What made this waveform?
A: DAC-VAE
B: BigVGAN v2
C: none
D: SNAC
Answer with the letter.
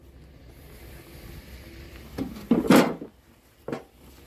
C